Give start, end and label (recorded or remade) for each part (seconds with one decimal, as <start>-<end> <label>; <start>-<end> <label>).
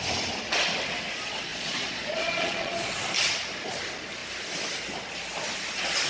0.0-1.5 recorded; 1.5-3.0 remade; 3.0-6.1 recorded